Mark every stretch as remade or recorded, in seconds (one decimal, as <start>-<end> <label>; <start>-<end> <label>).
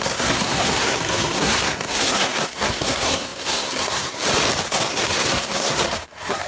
0.0-4.2 remade; 4.2-4.7 recorded; 4.7-6.5 remade